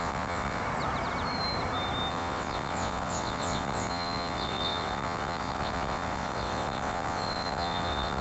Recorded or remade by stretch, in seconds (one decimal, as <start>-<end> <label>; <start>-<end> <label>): 0.0-0.6 remade; 0.6-2.1 recorded; 2.1-8.2 remade